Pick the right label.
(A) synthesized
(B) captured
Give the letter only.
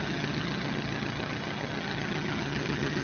A